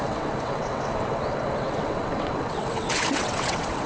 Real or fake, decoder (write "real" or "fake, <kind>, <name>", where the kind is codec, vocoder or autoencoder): fake, vocoder, WaveNeXt